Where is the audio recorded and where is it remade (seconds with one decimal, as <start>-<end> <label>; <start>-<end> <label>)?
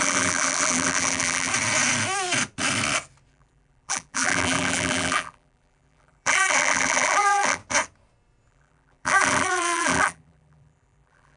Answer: 0.0-1.5 remade; 1.5-3.3 recorded; 3.3-7.6 remade; 7.6-8.5 recorded; 8.5-11.4 remade